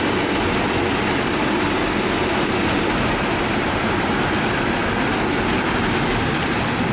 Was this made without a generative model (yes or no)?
no